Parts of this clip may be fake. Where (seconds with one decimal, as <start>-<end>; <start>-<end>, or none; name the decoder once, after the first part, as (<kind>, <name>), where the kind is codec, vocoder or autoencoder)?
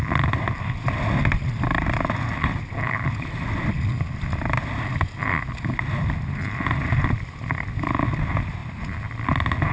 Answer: none